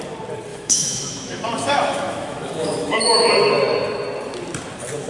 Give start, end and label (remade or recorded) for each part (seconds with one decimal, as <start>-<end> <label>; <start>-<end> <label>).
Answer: 0.0-0.5 recorded; 0.5-3.3 remade; 3.3-5.1 recorded